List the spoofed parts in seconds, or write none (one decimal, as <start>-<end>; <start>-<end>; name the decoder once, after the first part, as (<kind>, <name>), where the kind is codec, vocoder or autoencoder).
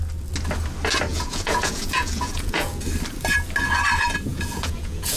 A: 1.1-2.8 (vocoder, Vocos); 4.3-5.2